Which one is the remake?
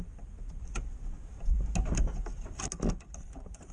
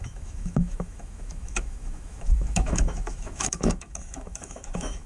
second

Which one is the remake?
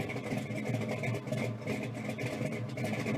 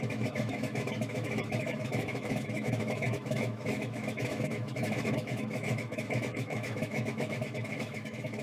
second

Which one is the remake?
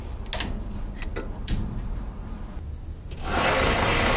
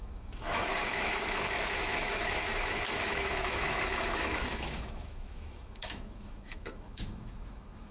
second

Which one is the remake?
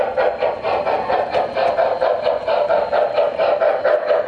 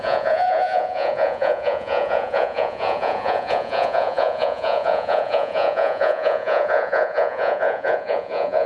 second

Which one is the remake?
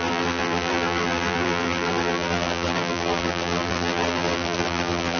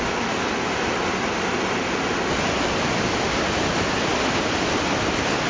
first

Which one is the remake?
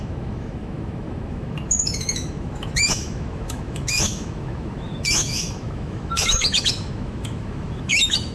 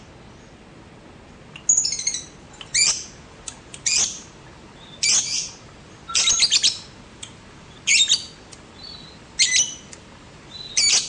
first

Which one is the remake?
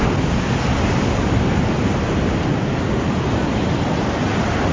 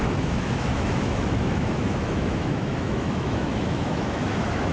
second